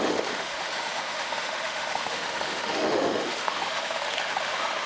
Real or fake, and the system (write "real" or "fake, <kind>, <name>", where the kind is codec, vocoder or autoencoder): fake, autoencoder, DAC-VAE